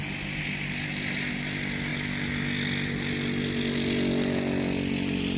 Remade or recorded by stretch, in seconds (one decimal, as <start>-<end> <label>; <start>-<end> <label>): 0.0-5.4 recorded